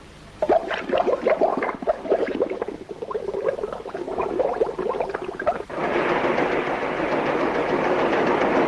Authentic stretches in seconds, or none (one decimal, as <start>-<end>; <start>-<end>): 0.0-1.5; 4.3-8.7